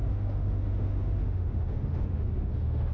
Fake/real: fake